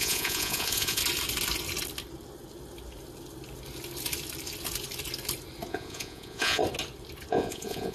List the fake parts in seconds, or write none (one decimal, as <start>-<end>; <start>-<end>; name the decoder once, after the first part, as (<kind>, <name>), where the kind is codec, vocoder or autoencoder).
0.0-1.0 (vocoder, Vocos); 5.7-6.6; 7.3-7.9